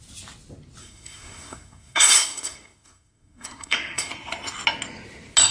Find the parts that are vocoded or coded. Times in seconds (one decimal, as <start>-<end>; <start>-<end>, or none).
0.8-4.1